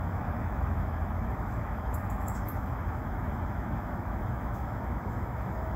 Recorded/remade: remade